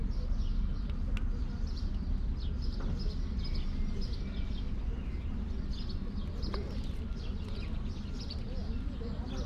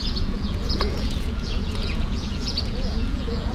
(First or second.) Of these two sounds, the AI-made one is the second